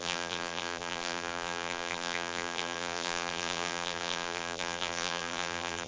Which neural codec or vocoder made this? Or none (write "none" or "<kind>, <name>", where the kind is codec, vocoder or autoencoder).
vocoder, BigVGAN v2